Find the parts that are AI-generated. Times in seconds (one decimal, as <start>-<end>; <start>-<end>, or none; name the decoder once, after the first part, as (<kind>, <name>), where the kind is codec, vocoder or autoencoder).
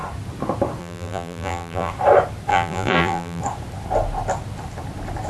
0.8-1.9 (vocoder, BigVGAN v2); 2.5-3.4